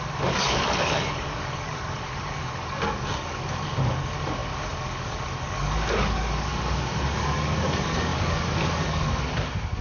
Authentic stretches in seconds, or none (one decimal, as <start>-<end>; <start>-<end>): none